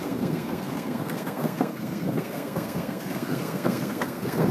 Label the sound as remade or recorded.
remade